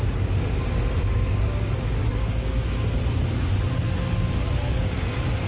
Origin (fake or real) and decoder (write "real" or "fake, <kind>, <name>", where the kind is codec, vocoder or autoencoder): real